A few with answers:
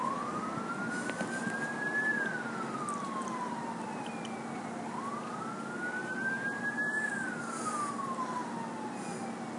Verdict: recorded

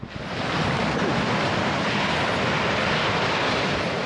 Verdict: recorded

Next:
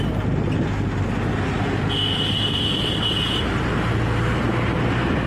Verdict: recorded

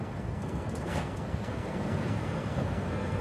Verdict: remade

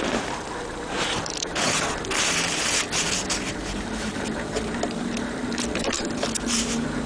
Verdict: remade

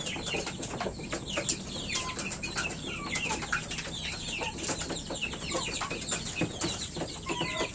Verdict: recorded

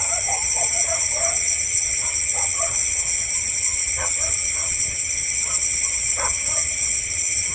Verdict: remade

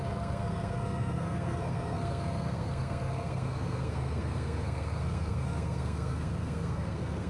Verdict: remade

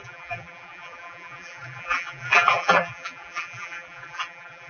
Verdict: remade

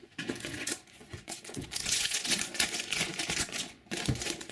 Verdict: remade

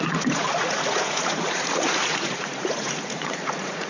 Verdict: remade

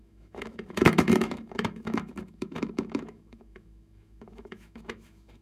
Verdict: remade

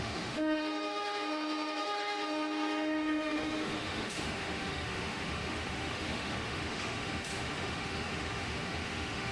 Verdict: remade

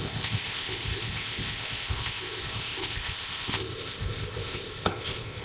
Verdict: remade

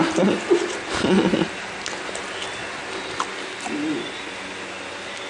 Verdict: recorded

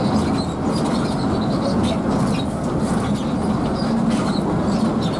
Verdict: recorded